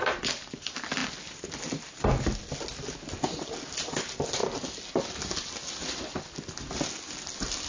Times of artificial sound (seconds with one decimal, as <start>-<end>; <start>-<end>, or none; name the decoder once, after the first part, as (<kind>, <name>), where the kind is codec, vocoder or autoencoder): none